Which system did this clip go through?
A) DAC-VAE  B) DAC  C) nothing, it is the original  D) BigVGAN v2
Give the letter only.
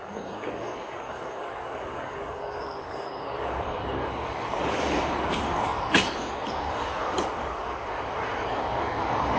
B